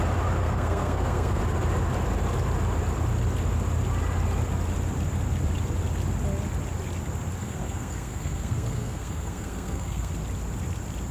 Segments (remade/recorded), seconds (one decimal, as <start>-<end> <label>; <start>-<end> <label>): 0.0-0.4 recorded; 0.4-1.4 remade; 1.4-7.4 recorded; 7.4-10.1 remade; 10.1-11.1 recorded